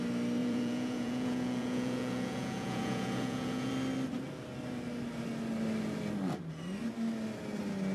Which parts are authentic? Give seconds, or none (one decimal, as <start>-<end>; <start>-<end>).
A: 0.0-0.4; 3.7-7.9